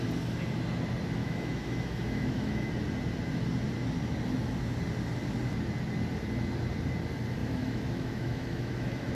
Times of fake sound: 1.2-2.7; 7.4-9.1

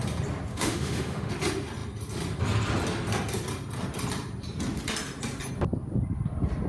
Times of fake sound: 0.5-1.3

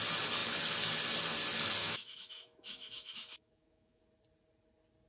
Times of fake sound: 1.8-4.0

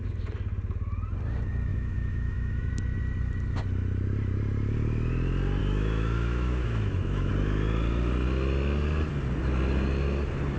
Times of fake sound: 1.7-2.7; 5.6-7.3

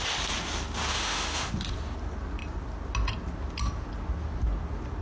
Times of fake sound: 0.9-1.5